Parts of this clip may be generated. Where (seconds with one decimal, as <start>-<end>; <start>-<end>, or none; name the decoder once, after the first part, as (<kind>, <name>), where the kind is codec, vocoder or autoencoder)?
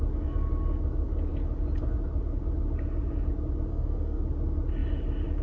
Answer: 3.7-4.2 (codec, SNAC)